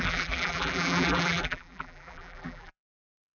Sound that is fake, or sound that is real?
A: fake